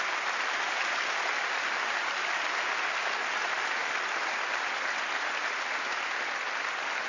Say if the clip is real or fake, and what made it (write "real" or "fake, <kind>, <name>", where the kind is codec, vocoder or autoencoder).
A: real